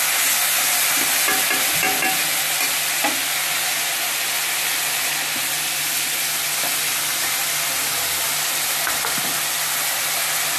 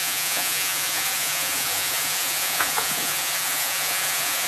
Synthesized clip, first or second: second